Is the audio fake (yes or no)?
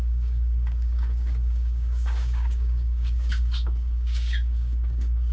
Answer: yes